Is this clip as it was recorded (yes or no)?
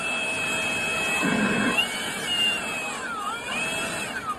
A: yes